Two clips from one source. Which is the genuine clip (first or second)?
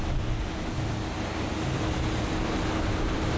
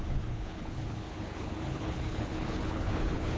first